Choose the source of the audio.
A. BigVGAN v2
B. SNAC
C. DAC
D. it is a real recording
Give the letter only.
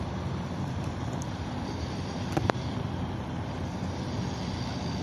D